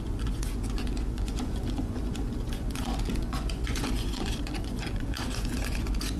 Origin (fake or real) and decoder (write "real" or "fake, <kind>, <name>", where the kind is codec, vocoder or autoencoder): fake, vocoder, Vocos